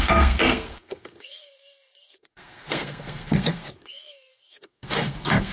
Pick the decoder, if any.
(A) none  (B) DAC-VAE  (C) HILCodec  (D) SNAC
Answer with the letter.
D